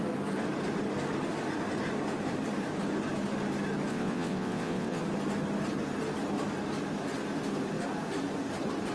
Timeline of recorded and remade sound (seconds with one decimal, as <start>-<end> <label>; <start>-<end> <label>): 0.0-3.9 recorded; 3.9-5.0 remade; 5.0-8.9 recorded